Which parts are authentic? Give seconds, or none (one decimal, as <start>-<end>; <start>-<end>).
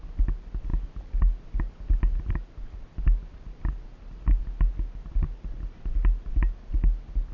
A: 0.0-7.3